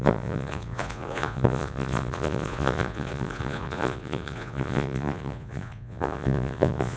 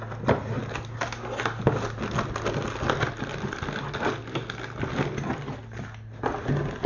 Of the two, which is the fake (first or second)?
first